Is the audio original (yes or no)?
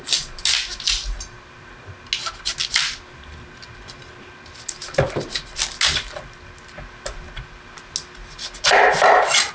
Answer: yes